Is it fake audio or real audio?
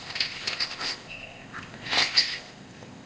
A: fake